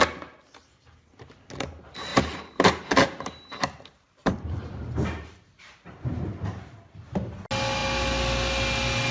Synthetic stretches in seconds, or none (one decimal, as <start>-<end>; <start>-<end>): 2.1-7.3